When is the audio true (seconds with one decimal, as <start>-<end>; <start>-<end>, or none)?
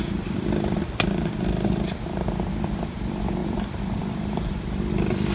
0.8-2.5